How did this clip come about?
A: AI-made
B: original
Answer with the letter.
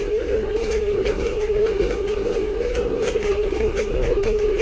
A